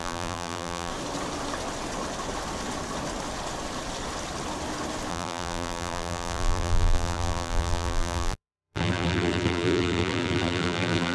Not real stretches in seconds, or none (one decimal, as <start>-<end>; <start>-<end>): 0.0-0.9; 5.1-11.1